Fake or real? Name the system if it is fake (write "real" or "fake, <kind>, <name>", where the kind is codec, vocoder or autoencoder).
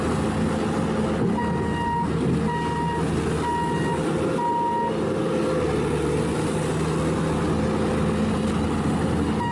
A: real